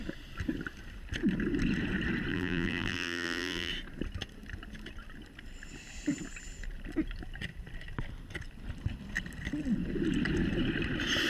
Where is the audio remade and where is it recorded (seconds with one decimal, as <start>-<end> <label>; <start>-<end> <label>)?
0.0-2.3 recorded; 2.3-3.7 remade; 3.7-11.3 recorded